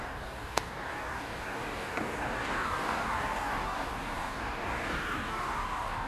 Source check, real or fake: fake